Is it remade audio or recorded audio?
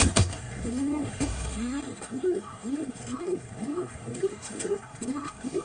remade